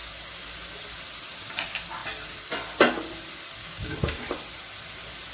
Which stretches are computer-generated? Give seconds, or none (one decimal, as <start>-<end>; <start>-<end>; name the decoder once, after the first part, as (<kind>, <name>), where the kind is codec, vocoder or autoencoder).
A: 3.6-4.2 (codec, DAC)

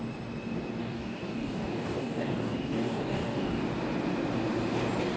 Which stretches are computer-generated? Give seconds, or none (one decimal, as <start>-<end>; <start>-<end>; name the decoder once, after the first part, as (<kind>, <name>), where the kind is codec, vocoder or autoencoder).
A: 0.8-3.6 (codec, DAC)

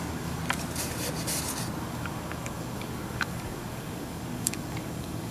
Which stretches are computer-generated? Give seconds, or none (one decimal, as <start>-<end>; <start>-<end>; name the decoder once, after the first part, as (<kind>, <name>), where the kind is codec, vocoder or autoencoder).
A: 0.0-0.4 (codec, DAC); 1.8-5.3

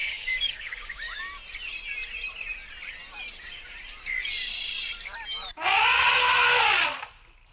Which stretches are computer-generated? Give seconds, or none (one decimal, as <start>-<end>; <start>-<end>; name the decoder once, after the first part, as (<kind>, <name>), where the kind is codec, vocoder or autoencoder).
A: 0.0-1.2 (codec, DAC)